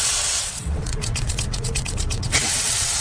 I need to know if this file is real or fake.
fake